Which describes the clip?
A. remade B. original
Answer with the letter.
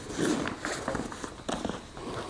B